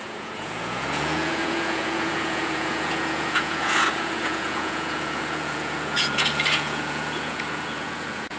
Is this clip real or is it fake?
fake